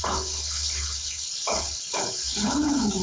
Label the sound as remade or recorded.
remade